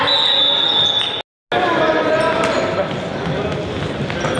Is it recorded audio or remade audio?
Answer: recorded